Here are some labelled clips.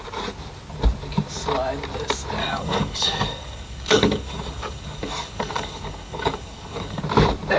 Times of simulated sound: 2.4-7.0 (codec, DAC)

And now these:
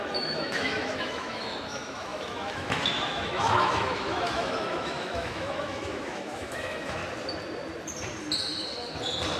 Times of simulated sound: 0.0-7.0 (autoencoder, DAC-VAE)